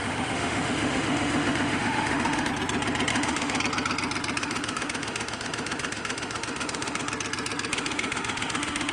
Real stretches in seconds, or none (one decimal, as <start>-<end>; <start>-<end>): 2.5-3.1; 3.6-4.4; 7.1-7.7